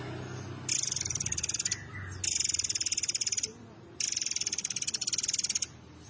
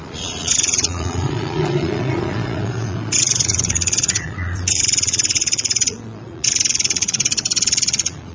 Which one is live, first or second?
first